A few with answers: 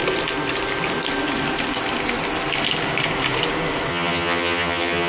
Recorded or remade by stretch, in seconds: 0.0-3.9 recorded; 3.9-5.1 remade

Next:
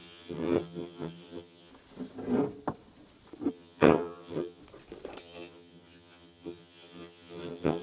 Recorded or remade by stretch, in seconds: 0.0-1.7 remade; 1.7-3.5 recorded; 3.5-4.6 remade; 4.6-5.2 recorded; 5.2-7.8 remade

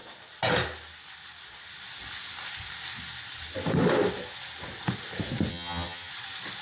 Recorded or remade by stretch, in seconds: 0.0-5.5 recorded; 5.5-6.1 remade; 6.1-6.6 recorded

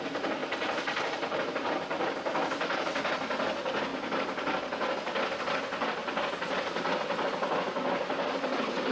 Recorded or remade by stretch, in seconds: 0.0-8.9 recorded

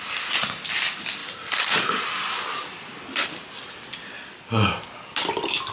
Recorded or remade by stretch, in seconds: 0.0-5.7 recorded

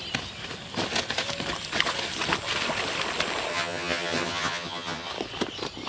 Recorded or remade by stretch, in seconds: 0.0-3.5 recorded; 3.5-5.1 remade; 5.1-5.9 recorded

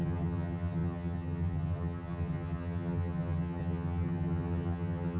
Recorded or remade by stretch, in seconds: 0.0-5.2 remade

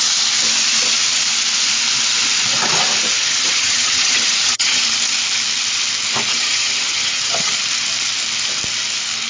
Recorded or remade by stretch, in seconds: 0.0-3.2 recorded; 3.2-4.8 remade; 4.8-6.3 recorded; 6.3-7.5 remade; 7.5-9.3 recorded